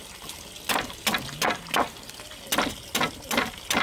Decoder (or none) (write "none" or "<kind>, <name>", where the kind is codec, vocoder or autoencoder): none